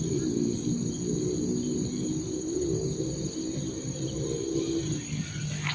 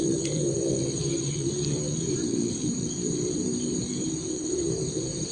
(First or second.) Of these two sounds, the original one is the first